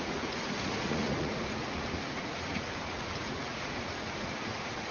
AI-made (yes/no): yes